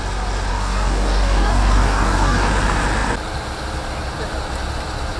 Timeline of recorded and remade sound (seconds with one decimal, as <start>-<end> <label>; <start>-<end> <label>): 0.0-0.5 recorded; 0.5-2.5 remade; 2.5-5.2 recorded